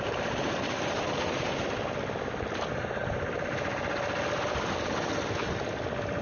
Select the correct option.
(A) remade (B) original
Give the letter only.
B